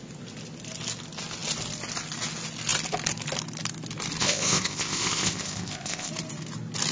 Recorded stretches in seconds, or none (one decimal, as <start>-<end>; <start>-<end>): 0.0-4.2; 6.1-6.9